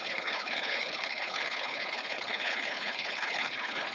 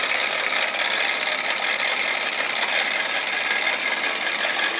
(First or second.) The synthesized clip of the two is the first